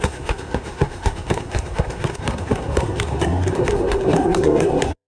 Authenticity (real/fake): fake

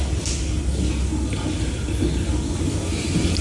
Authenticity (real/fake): real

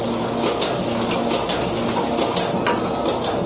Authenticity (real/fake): real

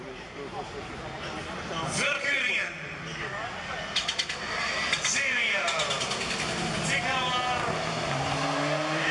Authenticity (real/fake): real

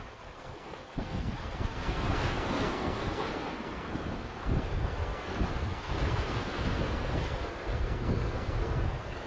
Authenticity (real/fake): fake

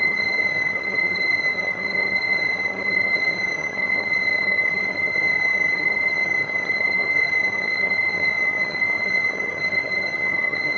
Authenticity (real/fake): fake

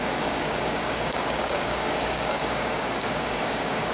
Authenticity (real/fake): fake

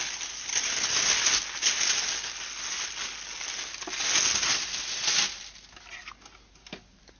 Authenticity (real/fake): real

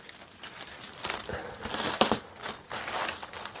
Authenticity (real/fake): real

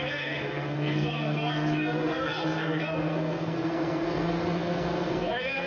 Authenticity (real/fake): fake